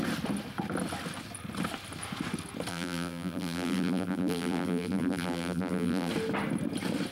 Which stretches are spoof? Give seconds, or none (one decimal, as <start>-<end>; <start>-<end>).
2.7-6.1